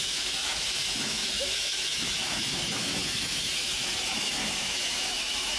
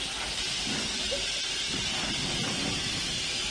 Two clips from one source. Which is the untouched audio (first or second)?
second